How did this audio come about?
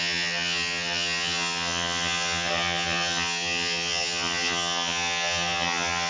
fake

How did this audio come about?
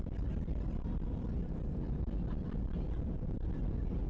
real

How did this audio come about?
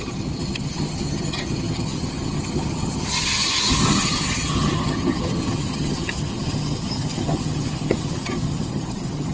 fake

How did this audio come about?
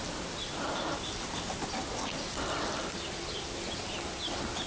real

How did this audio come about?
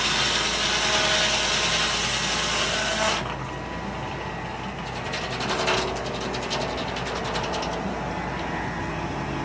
real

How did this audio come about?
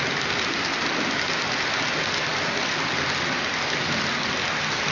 real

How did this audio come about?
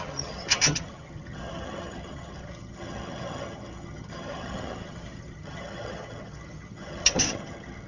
fake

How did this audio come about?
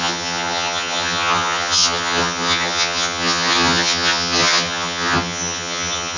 fake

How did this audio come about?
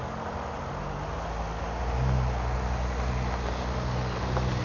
real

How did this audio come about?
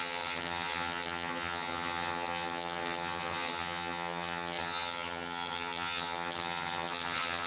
fake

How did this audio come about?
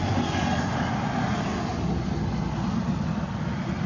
real